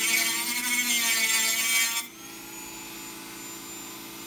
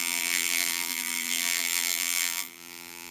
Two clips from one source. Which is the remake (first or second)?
second